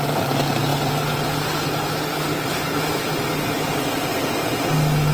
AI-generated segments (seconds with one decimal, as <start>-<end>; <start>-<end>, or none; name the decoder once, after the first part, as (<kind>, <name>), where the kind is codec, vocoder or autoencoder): none